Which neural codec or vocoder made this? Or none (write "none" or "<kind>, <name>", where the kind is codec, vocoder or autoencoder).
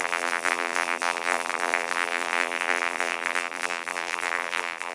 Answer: vocoder, BigVGAN v2